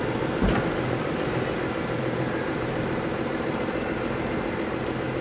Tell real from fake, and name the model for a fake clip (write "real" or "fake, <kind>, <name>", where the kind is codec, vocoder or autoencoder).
fake, vocoder, BigVGAN v2